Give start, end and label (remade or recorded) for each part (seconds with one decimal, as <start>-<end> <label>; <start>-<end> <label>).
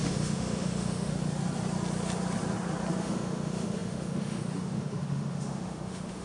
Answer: 0.0-1.1 remade; 1.1-3.0 recorded; 3.0-6.2 remade